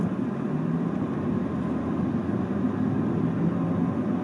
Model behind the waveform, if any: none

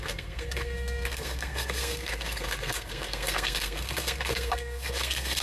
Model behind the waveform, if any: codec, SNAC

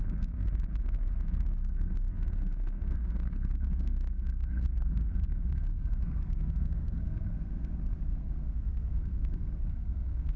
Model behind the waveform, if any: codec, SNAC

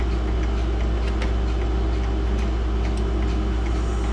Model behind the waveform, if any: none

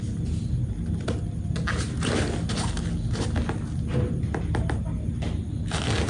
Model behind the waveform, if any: none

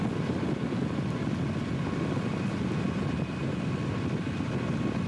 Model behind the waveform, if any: none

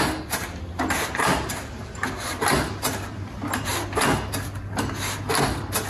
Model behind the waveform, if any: none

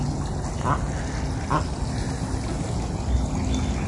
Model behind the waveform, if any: none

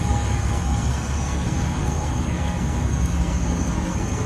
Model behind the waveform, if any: codec, SNAC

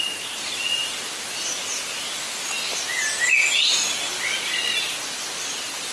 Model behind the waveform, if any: none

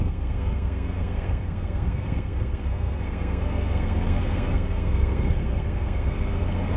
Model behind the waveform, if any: codec, SNAC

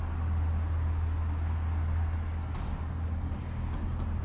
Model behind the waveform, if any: none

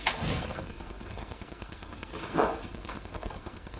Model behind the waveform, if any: codec, SNAC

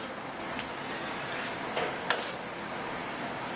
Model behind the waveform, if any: none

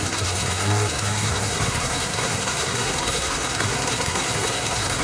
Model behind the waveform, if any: codec, SNAC